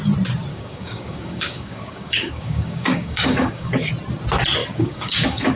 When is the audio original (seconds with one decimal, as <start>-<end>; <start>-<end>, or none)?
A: 0.0-0.5; 3.9-4.6

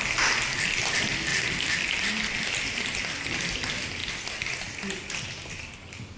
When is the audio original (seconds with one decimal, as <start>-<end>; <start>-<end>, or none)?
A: 0.0-6.2

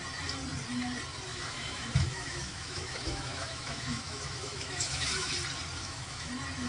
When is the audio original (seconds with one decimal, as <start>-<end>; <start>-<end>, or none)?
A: 0.0-1.3; 5.3-5.8; 6.3-6.7

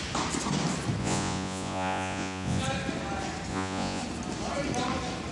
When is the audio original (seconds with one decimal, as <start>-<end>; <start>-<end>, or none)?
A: 0.0-1.0; 2.6-3.5; 4.0-5.3

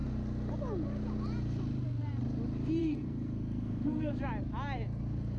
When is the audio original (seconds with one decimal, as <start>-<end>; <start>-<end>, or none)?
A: 0.0-2.8; 4.1-5.4

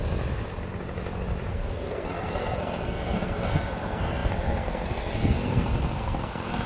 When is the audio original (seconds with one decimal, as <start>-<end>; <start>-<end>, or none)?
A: 0.0-1.5

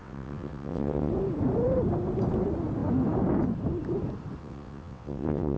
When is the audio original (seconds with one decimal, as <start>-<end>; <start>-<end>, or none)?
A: 1.1-4.4